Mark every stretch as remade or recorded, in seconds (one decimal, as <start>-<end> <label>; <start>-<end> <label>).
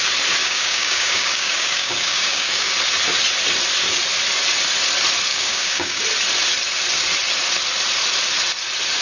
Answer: 0.0-0.4 recorded; 0.4-2.7 remade; 2.7-5.3 recorded; 5.3-6.0 remade; 6.0-9.0 recorded